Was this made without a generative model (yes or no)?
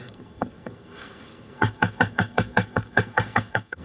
no